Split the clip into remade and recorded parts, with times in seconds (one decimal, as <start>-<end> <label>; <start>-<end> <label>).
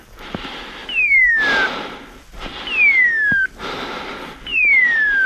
0.0-0.8 recorded; 0.8-1.3 remade; 1.3-4.5 recorded; 4.5-5.3 remade